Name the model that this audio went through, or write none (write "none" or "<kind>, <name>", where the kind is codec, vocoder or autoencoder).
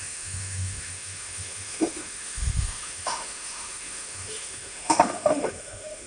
autoencoder, DAC-VAE